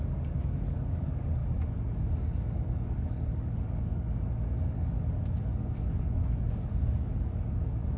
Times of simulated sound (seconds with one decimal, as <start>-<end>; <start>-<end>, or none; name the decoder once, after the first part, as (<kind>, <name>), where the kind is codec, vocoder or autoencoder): 0.0-1.4 (codec, DAC); 2.0-8.0